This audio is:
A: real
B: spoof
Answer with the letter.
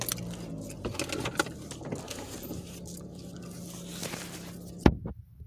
A